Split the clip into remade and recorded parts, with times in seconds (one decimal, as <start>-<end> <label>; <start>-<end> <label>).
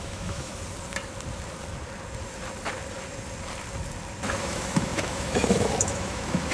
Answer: 0.0-0.5 remade; 0.5-4.4 recorded; 4.4-6.5 remade